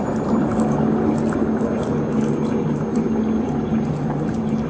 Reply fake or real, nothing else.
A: real